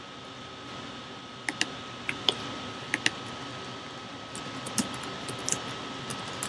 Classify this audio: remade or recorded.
recorded